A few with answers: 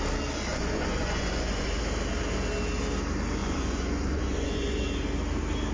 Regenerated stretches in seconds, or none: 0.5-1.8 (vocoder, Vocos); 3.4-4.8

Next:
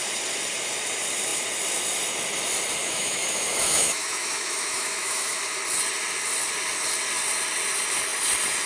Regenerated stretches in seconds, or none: 2.8-5.4 (autoencoder, DAC-VAE)

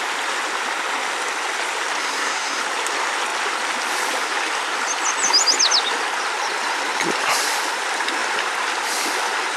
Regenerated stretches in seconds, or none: 2.0-2.6 (codec, SNAC)

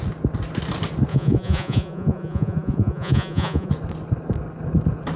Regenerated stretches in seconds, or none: 1.1-3.7 (vocoder, Vocos)

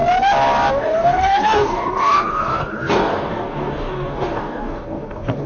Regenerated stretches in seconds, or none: 0.7-5.5 (codec, DAC)

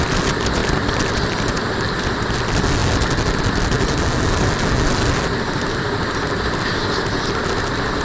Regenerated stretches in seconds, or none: 0.6-2.0 (vocoder, BigVGAN v2)

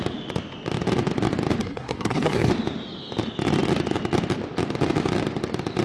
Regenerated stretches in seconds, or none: 1.6-2.5 (codec, SNAC)

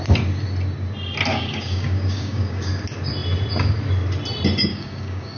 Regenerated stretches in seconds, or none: 1.3-2.7 (codec, DAC); 4.7-5.4